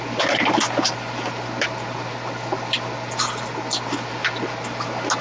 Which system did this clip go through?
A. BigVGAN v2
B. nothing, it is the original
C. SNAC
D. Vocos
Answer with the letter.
B